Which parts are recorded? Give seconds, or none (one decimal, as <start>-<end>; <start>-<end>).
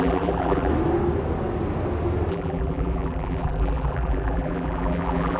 0.7-2.3